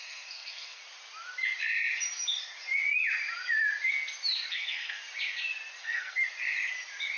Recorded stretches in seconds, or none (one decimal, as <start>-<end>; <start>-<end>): 0.8-4.5; 5.0-5.8; 6.2-7.2

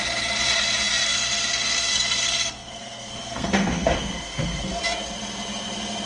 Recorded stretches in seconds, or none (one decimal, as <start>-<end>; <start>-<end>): 0.0-1.1; 4.8-6.1